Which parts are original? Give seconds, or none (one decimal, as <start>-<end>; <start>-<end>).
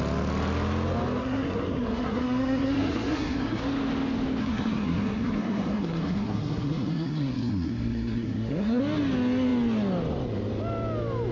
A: 0.0-1.2; 3.6-4.4; 8.8-11.3